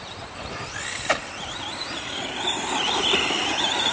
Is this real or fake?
real